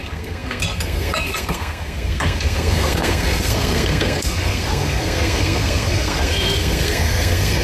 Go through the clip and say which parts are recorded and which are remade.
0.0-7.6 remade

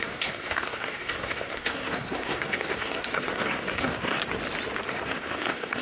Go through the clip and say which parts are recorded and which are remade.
0.0-4.2 remade; 4.2-4.9 recorded; 4.9-5.8 remade

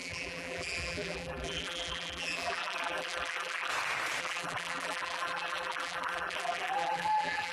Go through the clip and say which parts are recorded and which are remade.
0.0-3.7 remade; 3.7-4.2 recorded; 4.2-7.5 remade

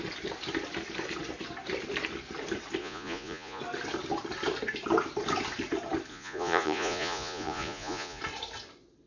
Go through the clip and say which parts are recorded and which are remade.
0.0-2.8 recorded; 2.8-3.6 remade; 3.6-6.1 recorded; 6.1-8.2 remade; 8.2-9.1 recorded